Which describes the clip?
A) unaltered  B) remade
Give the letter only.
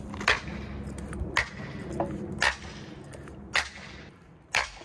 A